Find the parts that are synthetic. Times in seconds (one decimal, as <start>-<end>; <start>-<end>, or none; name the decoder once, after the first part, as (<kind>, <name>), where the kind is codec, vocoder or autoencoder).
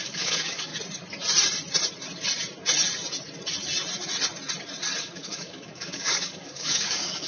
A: 0.0-0.7 (codec, DAC); 5.0-7.3